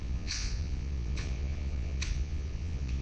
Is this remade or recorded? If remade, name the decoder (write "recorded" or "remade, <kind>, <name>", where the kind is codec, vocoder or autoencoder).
remade, vocoder, Vocos